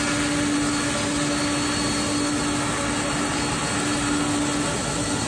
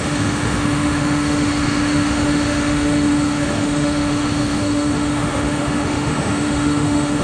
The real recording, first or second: first